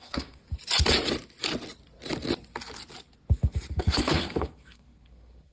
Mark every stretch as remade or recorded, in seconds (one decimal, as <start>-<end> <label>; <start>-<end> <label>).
0.0-0.4 remade; 0.4-3.7 recorded; 3.7-5.5 remade